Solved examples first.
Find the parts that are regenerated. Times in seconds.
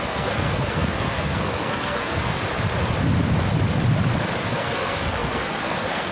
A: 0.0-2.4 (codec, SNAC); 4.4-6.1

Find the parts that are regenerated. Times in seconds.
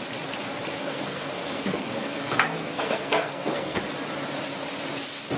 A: 0.7-3.8 (codec, SNAC)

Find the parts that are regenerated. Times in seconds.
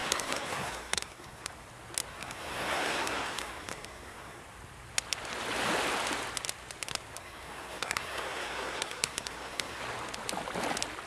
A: 0.0-1.5 (codec, SNAC); 2.1-4.4; 7.2-9.8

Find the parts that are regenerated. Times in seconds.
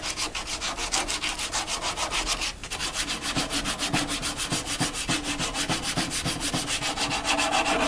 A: none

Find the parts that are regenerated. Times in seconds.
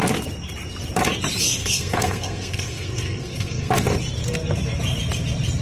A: 1.6-3.7 (codec, SNAC)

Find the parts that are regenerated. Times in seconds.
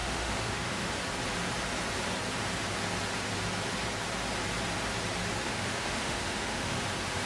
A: 0.0-0.9 (autoencoder, DAC-VAE); 5.4-6.8